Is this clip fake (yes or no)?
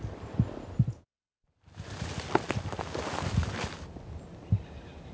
no